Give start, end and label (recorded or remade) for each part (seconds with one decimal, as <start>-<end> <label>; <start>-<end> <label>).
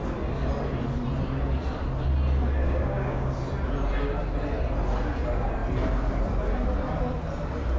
0.0-2.6 recorded; 2.6-3.3 remade; 3.3-7.8 recorded